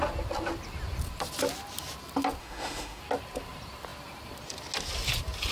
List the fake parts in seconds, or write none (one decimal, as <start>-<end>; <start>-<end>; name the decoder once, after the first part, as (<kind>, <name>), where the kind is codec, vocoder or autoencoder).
2.4-3.0 (autoencoder, DAC-VAE)